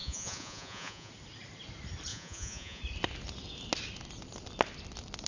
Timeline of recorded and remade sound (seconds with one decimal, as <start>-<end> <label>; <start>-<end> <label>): 0.0-1.1 remade; 1.1-2.1 recorded; 2.1-2.8 remade; 2.8-5.3 recorded